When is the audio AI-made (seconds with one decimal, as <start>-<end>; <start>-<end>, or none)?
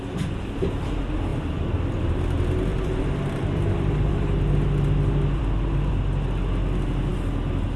1.3-2.1; 2.7-5.9; 7.1-7.8